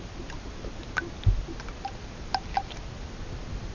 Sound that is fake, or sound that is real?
real